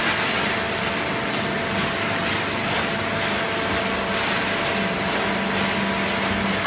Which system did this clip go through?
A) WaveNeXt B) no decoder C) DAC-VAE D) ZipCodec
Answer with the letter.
B